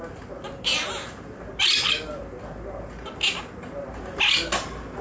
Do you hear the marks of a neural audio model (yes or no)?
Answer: no